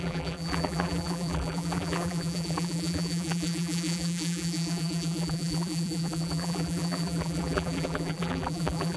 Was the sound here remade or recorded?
remade